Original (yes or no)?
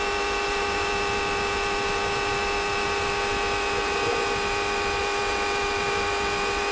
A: yes